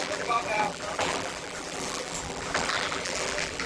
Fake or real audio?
fake